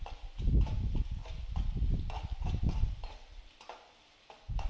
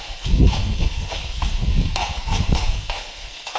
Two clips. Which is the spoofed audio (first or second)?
second